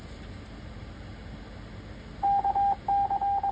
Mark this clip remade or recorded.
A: recorded